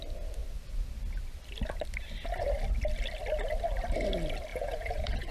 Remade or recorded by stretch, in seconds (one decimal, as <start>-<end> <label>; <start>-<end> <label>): 0.0-4.5 recorded; 4.5-5.3 remade